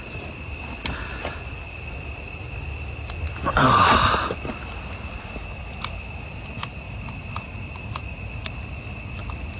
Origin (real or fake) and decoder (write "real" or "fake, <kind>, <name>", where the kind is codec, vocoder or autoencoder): real